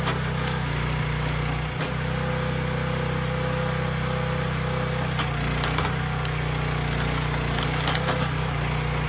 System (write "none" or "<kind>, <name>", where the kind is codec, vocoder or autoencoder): none